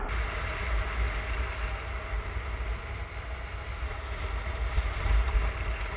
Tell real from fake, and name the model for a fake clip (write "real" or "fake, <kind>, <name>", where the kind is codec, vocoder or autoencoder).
real